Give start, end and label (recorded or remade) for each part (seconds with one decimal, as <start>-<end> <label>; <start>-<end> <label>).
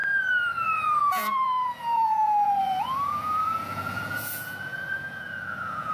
0.0-5.9 remade